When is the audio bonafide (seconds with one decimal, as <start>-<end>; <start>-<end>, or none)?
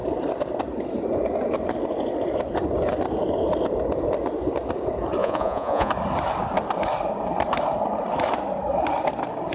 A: 0.0-5.2; 5.9-9.5